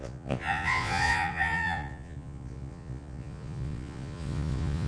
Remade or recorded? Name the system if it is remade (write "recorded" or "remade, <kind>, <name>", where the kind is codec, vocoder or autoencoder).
remade, vocoder, Vocos